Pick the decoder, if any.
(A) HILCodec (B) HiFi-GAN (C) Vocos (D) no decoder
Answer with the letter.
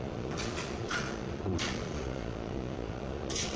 C